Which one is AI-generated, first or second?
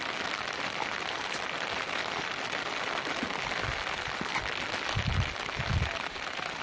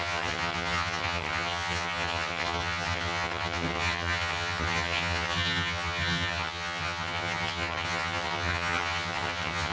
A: second